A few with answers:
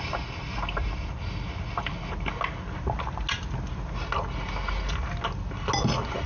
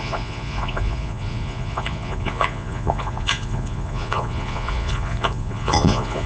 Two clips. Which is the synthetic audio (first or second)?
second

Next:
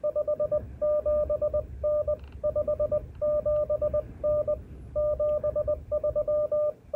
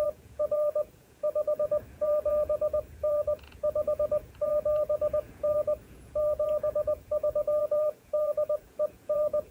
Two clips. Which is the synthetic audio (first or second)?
second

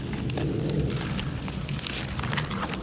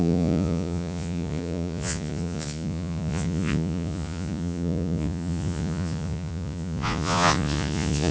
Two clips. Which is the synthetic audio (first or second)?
second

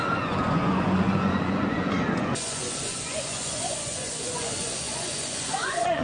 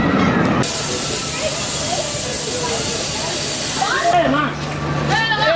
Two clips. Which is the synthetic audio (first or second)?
first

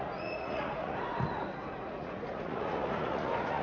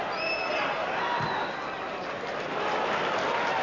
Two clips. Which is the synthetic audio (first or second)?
first